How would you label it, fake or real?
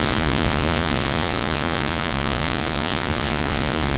fake